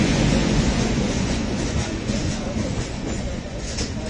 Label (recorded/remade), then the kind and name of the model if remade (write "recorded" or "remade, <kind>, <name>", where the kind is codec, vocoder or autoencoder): remade, vocoder, Vocos